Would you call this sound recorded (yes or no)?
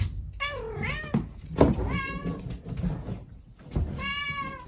yes